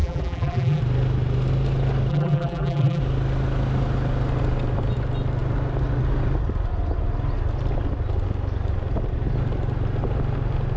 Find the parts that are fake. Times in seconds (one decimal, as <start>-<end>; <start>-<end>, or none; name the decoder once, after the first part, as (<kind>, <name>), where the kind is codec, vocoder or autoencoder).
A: 0.0-0.8 (vocoder, BigVGAN v2); 2.1-3.0

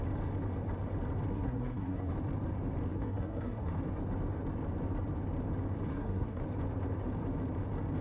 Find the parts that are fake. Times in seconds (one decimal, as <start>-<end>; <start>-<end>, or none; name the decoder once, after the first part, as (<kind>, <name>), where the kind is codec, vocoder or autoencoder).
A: 1.3-2.1 (codec, SNAC); 2.9-3.7; 5.9-6.4

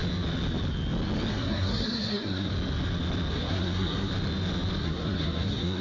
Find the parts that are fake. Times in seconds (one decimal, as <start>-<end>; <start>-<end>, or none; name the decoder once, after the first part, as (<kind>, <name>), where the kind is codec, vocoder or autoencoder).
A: 1.3-2.5 (codec, SNAC); 3.3-4.1; 4.8-5.8